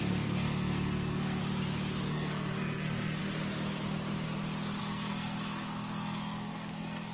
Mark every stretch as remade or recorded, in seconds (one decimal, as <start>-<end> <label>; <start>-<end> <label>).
0.0-1.4 remade; 1.4-2.1 recorded; 2.1-3.2 remade; 3.2-4.8 recorded; 4.8-7.1 remade